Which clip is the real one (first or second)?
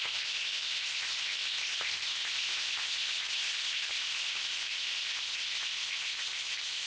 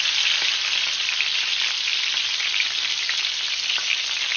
second